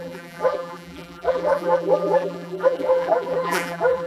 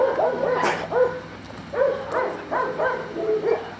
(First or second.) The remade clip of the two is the first